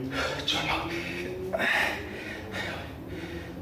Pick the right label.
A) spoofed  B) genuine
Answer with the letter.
B